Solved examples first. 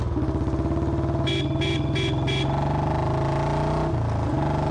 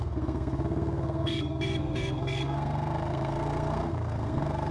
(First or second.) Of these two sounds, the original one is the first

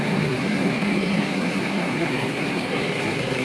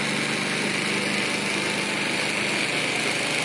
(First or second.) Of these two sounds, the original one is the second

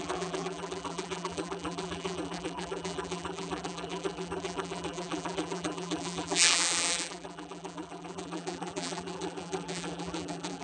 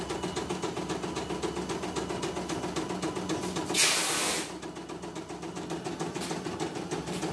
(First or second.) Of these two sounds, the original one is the second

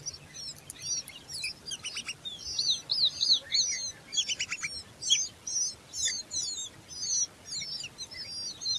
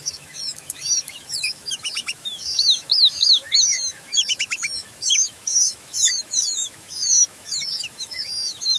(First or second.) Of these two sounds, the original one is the first